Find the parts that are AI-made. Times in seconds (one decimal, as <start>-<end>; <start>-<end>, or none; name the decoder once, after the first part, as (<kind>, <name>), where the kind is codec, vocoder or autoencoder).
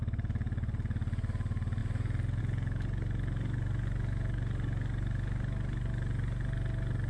none